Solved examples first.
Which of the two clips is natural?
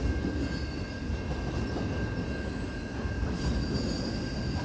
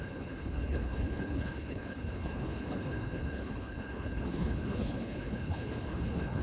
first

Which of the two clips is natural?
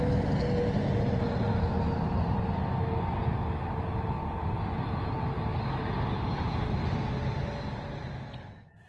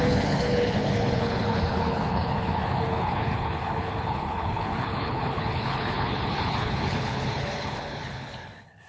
first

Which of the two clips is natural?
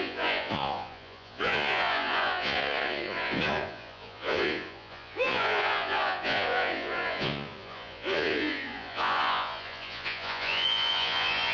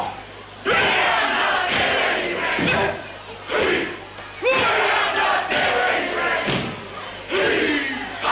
second